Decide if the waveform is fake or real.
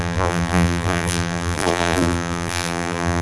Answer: fake